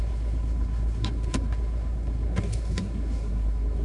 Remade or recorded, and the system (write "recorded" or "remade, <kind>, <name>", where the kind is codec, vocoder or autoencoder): remade, codec, SNAC